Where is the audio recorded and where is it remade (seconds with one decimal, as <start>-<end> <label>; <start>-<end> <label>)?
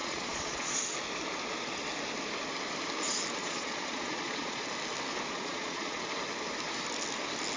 0.0-0.8 remade; 0.8-3.4 recorded; 3.4-4.6 remade; 4.6-5.3 recorded; 5.3-6.0 remade; 6.0-7.6 recorded